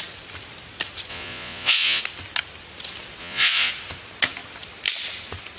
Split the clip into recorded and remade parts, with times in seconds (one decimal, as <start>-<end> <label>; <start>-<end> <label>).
0.0-1.1 recorded; 1.1-2.0 remade; 2.0-3.2 recorded; 3.2-3.7 remade; 3.7-5.6 recorded